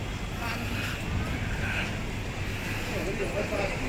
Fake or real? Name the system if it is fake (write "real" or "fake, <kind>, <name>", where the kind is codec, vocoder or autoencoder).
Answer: real